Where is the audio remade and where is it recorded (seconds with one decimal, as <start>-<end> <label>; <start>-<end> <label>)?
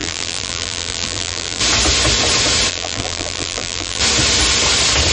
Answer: 0.0-1.6 remade; 1.6-2.7 recorded; 2.7-4.0 remade; 4.0-5.1 recorded